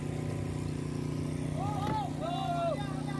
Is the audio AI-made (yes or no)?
no